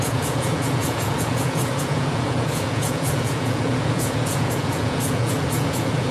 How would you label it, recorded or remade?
remade